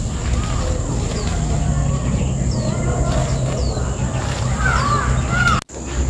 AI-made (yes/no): no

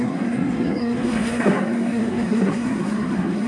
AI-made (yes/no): yes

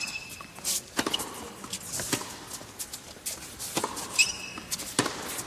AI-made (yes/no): no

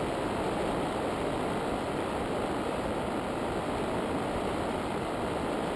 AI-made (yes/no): no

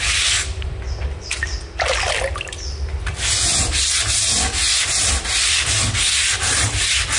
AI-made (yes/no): no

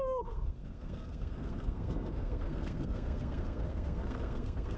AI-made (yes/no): yes